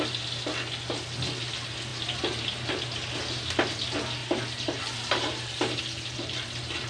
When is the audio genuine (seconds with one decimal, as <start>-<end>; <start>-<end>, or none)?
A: 0.0-4.2; 5.8-6.9